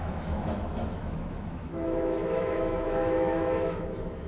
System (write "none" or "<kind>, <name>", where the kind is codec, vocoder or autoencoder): autoencoder, DAC-VAE